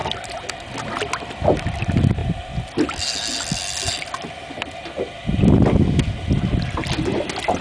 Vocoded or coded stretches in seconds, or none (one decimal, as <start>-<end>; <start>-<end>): 0.0-0.7